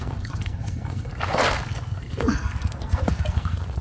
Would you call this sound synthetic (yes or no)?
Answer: yes